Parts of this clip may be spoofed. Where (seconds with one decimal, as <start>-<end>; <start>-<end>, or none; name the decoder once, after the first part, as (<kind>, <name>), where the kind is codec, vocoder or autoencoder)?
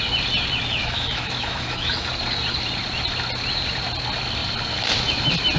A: 0.8-2.1 (autoencoder, DAC-VAE)